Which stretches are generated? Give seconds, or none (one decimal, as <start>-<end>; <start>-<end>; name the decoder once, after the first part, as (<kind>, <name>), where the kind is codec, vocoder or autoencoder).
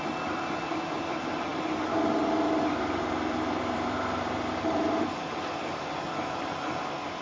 1.5-5.8 (vocoder, BigVGAN v2)